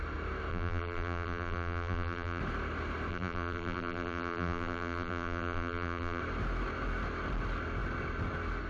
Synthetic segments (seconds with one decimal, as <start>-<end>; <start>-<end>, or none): 0.5-2.4; 3.1-6.2